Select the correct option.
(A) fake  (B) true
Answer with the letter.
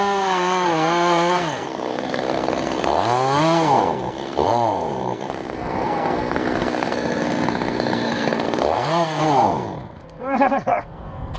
A